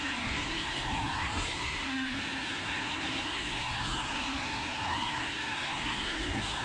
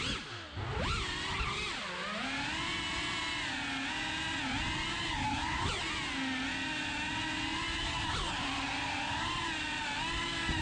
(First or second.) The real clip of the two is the second